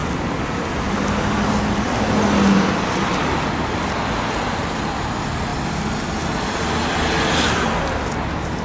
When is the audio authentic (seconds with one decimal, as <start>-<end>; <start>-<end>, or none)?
0.0-8.6